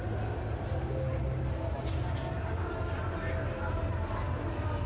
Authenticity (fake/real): real